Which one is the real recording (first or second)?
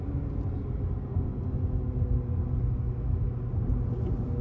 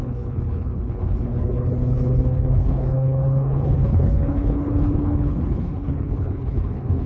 first